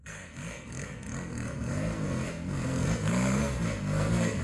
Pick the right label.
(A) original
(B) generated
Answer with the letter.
B